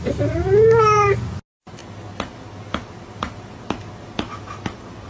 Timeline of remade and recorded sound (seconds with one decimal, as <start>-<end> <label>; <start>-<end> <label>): 0.0-5.1 recorded